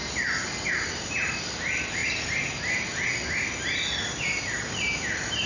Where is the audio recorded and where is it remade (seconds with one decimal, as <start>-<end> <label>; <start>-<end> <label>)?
0.0-5.5 recorded

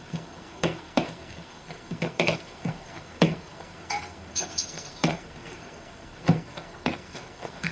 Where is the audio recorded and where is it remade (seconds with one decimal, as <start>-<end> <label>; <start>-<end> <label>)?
0.0-7.7 remade

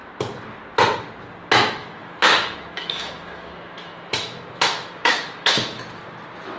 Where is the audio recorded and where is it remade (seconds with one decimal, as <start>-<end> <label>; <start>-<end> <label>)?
0.0-1.8 recorded; 1.8-5.8 remade; 5.8-6.6 recorded

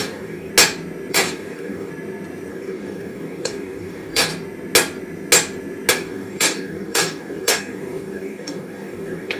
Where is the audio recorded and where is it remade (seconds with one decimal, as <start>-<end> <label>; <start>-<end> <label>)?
0.0-0.5 remade; 0.5-1.1 recorded; 1.1-1.9 remade; 1.9-2.5 recorded; 2.5-4.3 remade; 4.3-5.9 recorded; 5.9-9.4 remade

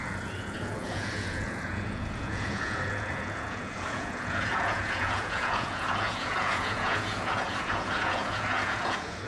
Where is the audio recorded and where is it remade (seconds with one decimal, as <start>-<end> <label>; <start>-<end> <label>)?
0.0-9.3 remade

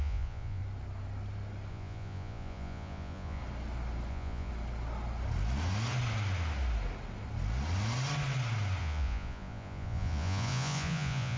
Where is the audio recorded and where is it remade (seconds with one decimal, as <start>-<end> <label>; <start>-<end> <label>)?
0.0-0.6 remade; 0.6-1.7 recorded; 1.7-3.4 remade; 3.4-4.1 recorded; 4.1-4.5 remade; 4.5-8.8 recorded; 8.8-11.4 remade

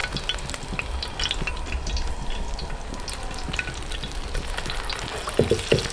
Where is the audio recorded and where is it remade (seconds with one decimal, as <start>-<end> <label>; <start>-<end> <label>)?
0.0-5.9 recorded